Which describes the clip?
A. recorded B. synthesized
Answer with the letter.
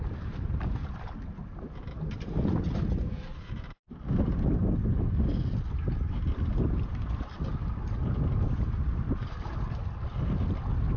A